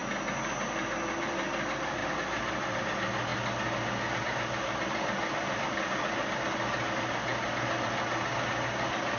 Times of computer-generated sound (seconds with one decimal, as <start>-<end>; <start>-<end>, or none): none